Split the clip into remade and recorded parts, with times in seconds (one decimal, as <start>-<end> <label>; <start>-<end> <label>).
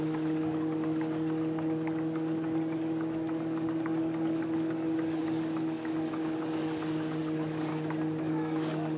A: 0.0-7.7 remade; 7.7-8.2 recorded; 8.2-9.0 remade